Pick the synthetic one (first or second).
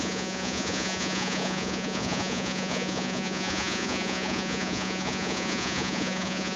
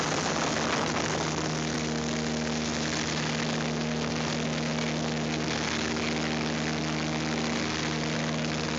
first